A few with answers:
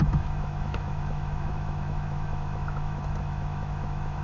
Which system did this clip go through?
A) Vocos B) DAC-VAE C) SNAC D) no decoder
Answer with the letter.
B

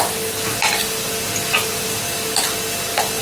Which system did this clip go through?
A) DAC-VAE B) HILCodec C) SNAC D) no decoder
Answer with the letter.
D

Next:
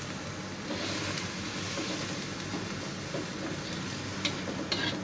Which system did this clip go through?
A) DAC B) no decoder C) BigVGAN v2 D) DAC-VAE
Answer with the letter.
B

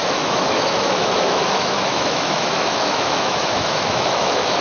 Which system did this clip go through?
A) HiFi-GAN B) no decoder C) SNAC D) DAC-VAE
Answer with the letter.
D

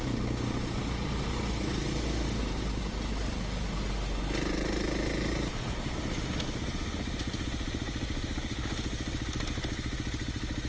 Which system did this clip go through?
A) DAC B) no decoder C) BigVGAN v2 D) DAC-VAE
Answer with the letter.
B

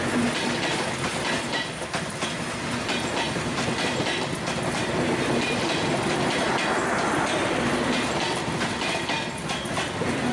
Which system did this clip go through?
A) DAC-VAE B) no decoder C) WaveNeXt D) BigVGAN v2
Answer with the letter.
B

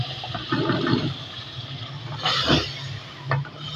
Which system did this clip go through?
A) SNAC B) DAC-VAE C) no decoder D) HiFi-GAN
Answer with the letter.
C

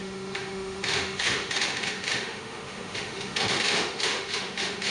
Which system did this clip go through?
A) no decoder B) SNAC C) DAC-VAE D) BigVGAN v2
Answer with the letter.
C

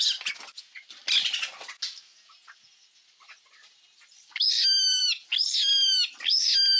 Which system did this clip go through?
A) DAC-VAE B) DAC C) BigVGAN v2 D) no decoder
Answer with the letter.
D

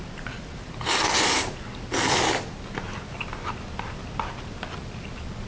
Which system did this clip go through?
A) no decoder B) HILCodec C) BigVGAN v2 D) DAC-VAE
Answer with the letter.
A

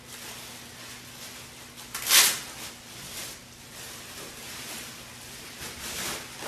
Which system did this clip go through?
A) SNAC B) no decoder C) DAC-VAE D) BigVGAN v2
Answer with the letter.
B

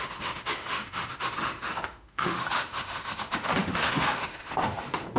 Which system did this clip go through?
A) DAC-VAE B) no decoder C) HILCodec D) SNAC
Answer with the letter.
A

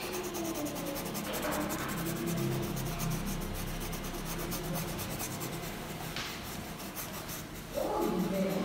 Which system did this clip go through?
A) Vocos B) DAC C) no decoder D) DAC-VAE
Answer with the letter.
C